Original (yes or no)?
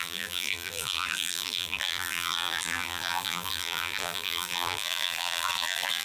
no